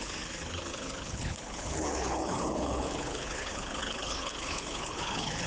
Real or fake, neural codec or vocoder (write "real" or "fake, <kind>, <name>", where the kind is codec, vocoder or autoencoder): fake, codec, HILCodec